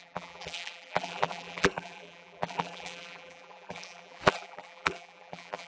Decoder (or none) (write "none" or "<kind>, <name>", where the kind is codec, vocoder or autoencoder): vocoder, BigVGAN v2